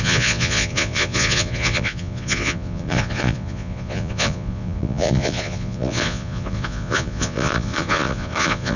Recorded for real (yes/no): no